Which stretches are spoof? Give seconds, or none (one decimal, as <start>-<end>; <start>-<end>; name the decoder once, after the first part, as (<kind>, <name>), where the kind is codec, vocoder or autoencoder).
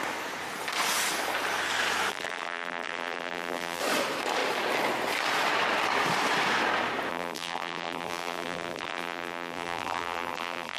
2.1-3.8 (vocoder, BigVGAN v2); 7.1-10.8